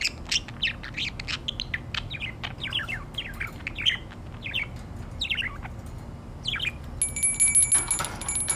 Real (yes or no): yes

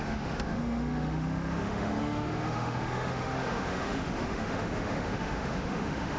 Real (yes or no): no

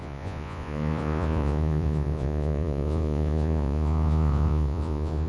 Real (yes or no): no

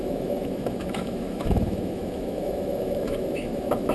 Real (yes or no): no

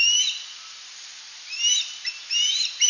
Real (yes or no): yes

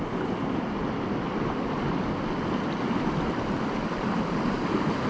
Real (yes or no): yes